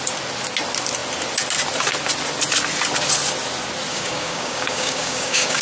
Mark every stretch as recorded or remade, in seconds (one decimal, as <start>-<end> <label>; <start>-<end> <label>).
0.0-3.9 recorded; 3.9-5.6 remade